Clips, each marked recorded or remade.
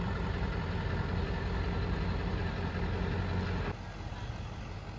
recorded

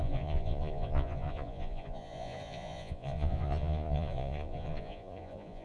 remade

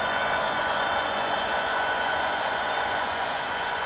remade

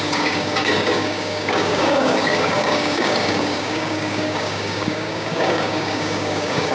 remade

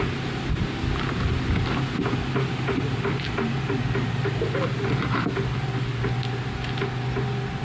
recorded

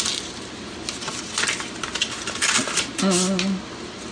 recorded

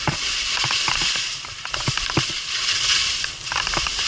remade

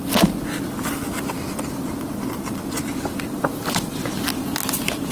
recorded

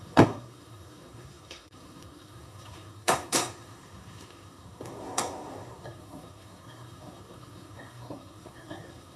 remade